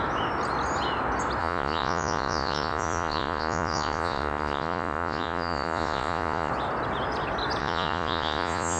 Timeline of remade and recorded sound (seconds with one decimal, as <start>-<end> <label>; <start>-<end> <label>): 0.0-1.4 recorded; 1.4-6.5 remade; 6.5-7.6 recorded; 7.6-8.8 remade